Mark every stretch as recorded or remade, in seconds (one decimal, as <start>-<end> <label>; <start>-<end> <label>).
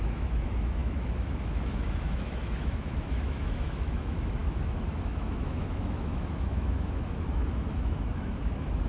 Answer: 0.0-8.9 remade